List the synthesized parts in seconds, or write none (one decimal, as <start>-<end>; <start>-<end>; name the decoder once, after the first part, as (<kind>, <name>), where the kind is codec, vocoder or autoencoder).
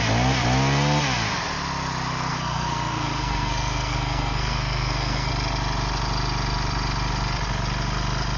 2.3-5.3 (codec, SNAC)